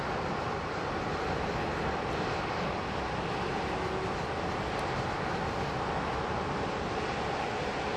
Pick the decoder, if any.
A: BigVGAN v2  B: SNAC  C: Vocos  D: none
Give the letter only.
D